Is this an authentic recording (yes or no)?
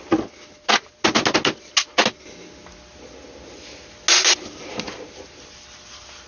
yes